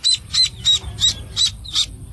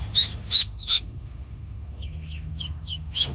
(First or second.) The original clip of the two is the first